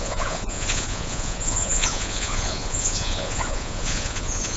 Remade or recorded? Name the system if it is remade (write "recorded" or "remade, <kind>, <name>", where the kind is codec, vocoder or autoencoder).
remade, vocoder, Vocos